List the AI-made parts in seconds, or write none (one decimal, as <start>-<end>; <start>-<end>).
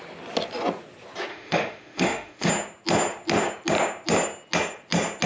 1.3-2.5